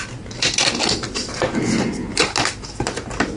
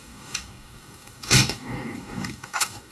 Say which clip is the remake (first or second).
second